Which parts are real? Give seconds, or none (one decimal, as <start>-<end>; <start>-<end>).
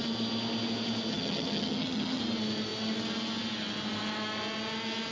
0.0-1.1; 2.2-5.1